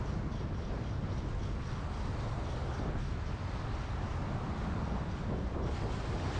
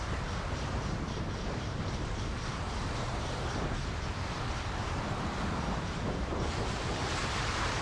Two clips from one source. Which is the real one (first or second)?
first